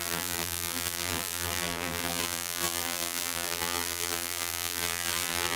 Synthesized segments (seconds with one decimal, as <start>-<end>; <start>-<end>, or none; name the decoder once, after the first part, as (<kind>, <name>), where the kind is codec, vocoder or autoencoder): 0.0-5.6 (vocoder, BigVGAN v2)